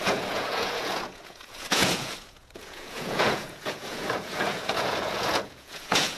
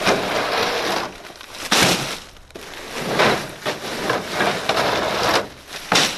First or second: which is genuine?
second